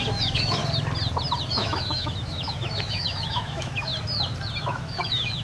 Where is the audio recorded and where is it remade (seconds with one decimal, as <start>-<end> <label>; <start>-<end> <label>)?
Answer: 0.0-0.6 remade; 0.6-1.5 recorded; 1.5-3.9 remade; 3.9-4.6 recorded; 4.6-5.4 remade